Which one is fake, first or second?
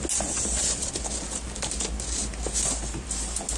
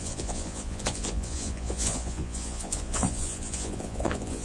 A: second